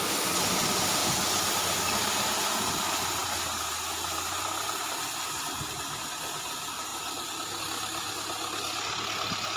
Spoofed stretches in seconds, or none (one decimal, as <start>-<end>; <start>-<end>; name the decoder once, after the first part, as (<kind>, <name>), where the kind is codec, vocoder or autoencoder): none